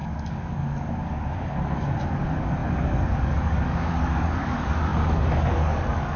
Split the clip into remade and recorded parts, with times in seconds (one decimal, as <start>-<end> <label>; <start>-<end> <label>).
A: 0.0-6.2 remade